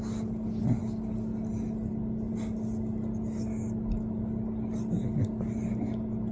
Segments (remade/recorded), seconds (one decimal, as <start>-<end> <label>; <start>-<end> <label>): 0.0-6.3 recorded